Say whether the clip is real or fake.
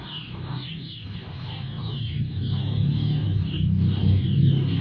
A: fake